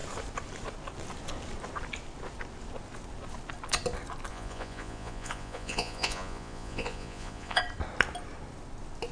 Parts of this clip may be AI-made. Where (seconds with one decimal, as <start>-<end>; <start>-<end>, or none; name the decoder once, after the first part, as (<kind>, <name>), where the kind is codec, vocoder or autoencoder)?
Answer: 4.3-7.6 (vocoder, Vocos)